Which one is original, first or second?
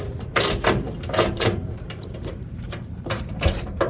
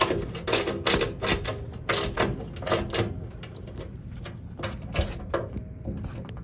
second